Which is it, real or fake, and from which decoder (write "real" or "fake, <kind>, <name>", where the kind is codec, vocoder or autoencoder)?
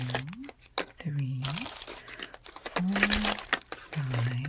real